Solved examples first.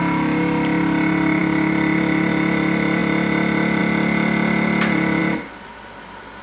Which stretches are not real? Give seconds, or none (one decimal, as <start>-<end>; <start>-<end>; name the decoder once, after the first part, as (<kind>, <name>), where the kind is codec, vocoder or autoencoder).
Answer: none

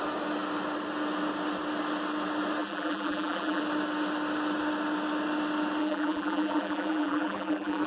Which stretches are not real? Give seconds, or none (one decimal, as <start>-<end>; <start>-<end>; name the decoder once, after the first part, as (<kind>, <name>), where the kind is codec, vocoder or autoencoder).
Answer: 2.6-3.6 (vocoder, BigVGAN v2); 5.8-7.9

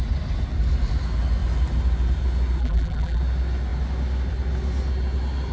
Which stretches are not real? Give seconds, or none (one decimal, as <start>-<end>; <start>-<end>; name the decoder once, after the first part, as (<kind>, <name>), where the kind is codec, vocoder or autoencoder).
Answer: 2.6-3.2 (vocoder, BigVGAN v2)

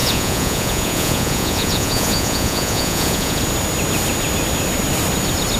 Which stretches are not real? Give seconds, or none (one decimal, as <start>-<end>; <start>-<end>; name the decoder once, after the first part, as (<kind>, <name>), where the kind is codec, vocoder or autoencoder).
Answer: 0.0-3.4 (vocoder, Vocos)